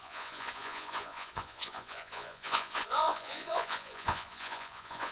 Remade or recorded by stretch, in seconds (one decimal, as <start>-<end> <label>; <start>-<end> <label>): 0.0-5.1 remade